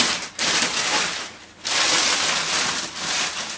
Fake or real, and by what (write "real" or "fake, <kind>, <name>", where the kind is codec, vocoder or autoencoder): real